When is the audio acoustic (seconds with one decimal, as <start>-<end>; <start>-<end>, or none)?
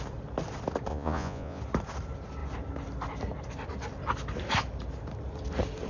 0.0-0.9; 1.6-5.9